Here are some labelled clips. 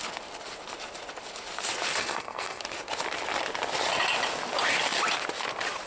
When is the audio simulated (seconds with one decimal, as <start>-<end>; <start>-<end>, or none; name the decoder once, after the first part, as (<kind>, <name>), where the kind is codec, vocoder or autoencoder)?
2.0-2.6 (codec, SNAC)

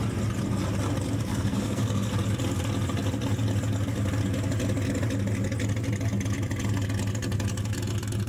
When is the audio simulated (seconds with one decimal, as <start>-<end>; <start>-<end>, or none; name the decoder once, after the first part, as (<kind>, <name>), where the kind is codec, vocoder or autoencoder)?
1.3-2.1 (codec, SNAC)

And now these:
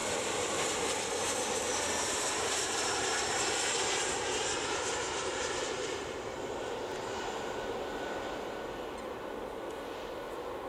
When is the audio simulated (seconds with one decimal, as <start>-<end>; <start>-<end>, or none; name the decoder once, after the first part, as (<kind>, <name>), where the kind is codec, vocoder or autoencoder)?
0.0-0.8 (vocoder, BigVGAN v2); 1.9-6.7

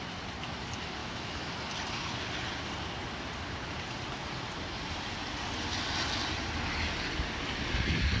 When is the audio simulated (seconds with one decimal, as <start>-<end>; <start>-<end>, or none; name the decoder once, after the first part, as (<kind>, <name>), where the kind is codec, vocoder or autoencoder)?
1.0-1.5 (autoencoder, DAC-VAE)

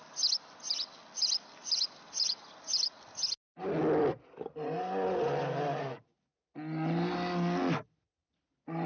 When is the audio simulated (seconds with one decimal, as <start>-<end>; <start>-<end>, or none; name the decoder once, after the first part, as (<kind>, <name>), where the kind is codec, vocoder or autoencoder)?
none

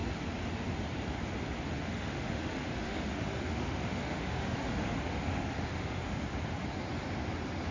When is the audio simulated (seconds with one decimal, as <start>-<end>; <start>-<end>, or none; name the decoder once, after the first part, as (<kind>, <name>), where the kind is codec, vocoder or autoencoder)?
1.8-6.2 (autoencoder, DAC-VAE)

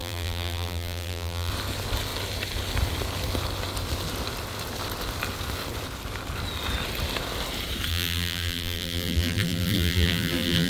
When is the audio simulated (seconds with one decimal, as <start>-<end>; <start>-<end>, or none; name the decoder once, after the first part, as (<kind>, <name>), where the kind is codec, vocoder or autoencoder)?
0.0-1.5 (vocoder, BigVGAN v2); 7.9-10.7